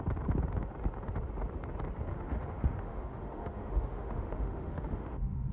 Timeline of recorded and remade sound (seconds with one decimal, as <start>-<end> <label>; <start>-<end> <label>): 0.0-2.1 recorded; 2.1-5.5 remade